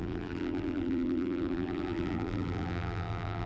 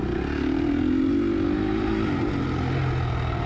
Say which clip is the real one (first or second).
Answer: second